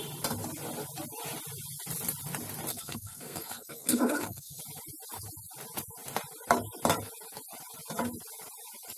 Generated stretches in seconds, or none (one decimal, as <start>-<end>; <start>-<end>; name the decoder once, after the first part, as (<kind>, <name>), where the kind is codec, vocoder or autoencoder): 2.7-4.6 (codec, SNAC)